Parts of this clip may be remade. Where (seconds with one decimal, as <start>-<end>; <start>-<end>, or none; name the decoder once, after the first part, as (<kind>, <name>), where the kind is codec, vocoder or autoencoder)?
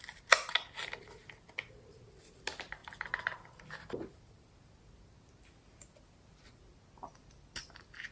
none